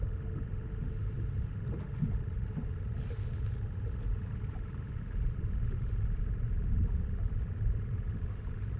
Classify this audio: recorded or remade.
recorded